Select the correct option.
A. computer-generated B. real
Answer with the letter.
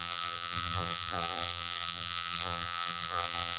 A